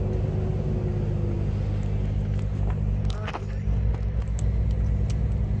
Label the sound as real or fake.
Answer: real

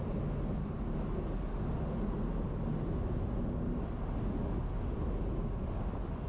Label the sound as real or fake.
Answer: real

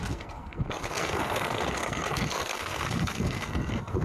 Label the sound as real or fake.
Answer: fake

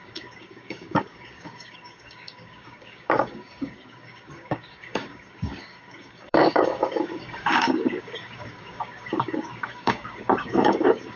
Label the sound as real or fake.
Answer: fake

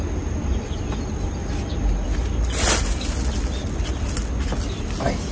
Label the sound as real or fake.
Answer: real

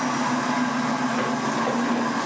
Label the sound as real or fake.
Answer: real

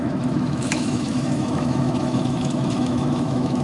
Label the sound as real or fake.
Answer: fake